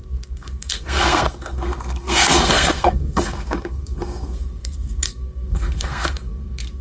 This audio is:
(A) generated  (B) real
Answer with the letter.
A